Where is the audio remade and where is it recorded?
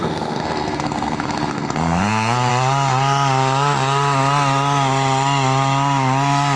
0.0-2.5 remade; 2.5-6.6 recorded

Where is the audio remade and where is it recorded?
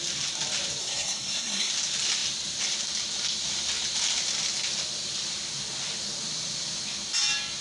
0.0-0.8 recorded; 0.8-1.7 remade; 1.7-7.6 recorded